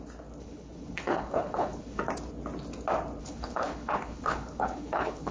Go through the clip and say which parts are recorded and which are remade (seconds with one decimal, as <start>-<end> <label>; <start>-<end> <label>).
0.0-0.4 recorded; 0.4-2.0 remade; 2.0-3.2 recorded; 3.2-5.3 remade